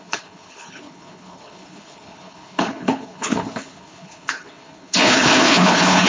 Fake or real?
fake